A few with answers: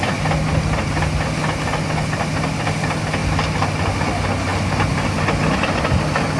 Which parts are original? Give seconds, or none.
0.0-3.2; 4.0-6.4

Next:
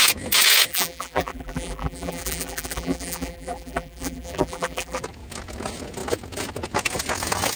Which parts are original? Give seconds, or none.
0.0-0.7; 5.0-7.6